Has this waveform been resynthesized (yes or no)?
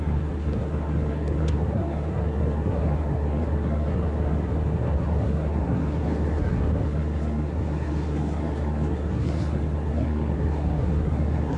yes